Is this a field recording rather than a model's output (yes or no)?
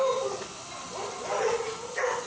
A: yes